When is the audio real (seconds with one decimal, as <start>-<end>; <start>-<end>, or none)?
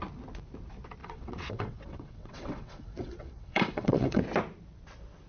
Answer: 0.0-1.0; 4.2-5.3